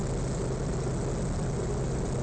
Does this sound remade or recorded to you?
recorded